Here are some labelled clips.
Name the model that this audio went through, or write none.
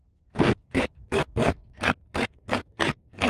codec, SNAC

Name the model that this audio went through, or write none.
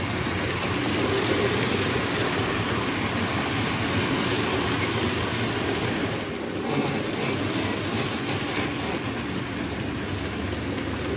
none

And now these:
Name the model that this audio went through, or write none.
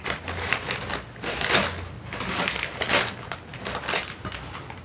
none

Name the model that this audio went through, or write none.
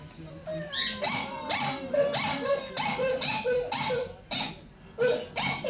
none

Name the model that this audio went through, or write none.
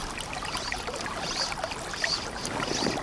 none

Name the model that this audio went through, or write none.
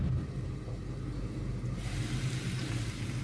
none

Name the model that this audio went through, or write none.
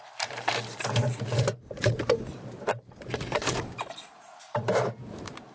vocoder, BigVGAN v2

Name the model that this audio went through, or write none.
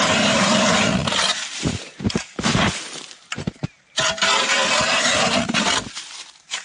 vocoder, BigVGAN v2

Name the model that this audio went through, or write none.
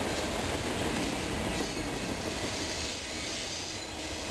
none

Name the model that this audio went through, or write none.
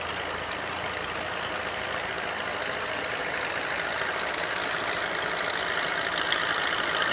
none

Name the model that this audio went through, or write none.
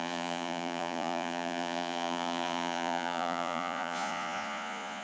vocoder, Vocos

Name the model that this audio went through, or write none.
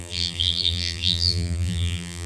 vocoder, BigVGAN v2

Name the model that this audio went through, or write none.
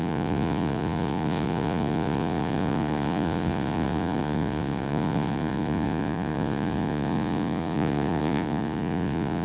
vocoder, Vocos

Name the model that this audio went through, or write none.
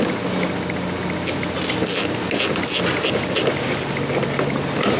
none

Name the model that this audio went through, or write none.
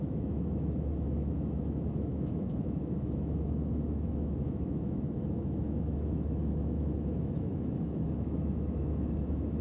autoencoder, DAC-VAE